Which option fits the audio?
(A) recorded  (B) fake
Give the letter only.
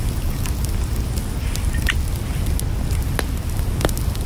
A